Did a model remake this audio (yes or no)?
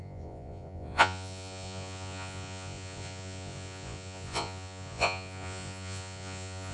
yes